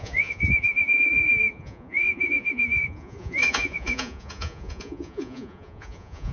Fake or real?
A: fake